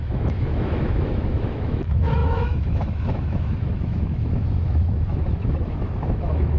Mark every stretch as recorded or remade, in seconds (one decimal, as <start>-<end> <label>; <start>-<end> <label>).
0.0-6.6 remade